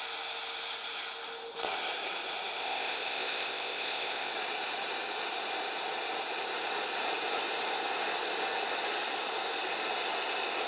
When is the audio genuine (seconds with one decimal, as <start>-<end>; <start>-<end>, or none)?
0.0-2.6; 4.3-10.7